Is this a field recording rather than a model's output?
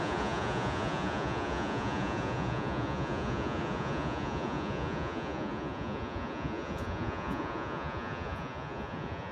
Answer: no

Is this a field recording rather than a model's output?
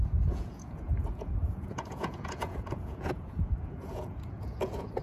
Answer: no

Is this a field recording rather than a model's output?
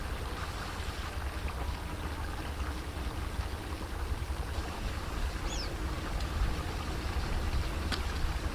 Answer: yes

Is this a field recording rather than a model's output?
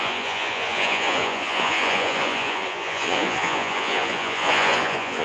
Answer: no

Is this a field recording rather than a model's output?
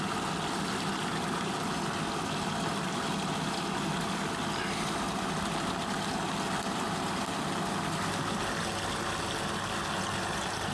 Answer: yes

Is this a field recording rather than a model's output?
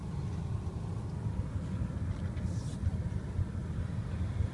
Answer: yes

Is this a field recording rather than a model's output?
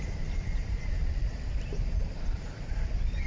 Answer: yes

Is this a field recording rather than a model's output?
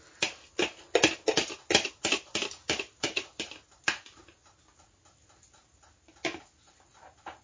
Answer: yes